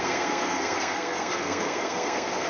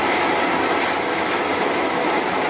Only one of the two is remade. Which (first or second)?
first